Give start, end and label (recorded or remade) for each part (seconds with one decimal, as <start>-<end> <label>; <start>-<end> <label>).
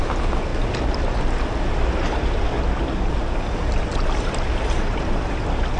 0.0-5.8 recorded